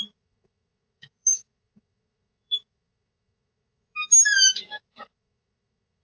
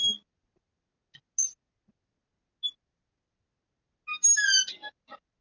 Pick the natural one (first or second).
second